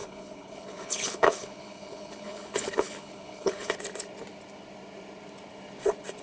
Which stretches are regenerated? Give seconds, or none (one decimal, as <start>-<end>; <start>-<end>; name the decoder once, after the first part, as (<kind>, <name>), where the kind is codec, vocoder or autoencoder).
0.0-3.7 (codec, HILCodec)